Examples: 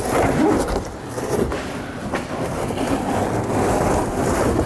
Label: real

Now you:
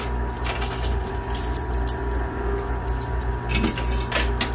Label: real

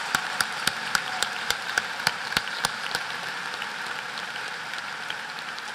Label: fake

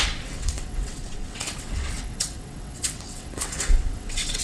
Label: fake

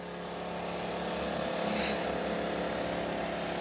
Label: real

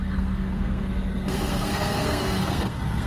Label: fake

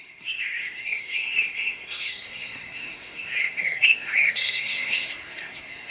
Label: fake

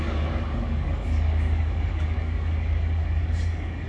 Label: fake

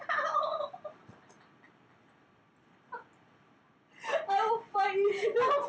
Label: real